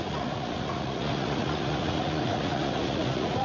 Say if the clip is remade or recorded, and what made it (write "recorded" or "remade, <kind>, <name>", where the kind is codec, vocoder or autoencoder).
remade, vocoder, Vocos